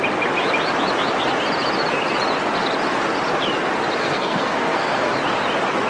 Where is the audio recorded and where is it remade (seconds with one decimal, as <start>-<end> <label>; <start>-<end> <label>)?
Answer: 0.0-4.0 recorded; 4.0-5.1 remade; 5.1-5.9 recorded